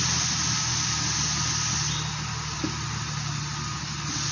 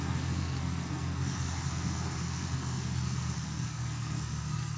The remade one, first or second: second